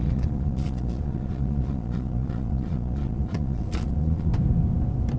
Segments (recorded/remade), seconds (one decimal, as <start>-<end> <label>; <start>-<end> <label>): 0.0-4.3 remade; 4.3-5.2 recorded